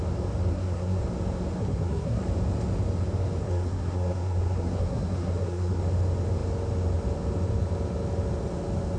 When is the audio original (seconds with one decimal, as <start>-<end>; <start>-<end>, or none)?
0.0-0.5; 1.0-1.6; 2.2-3.4; 5.8-9.0